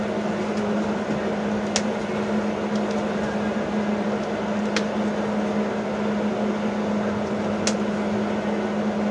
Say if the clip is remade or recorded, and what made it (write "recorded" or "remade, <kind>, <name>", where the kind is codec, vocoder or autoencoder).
recorded